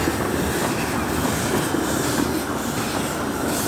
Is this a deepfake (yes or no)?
no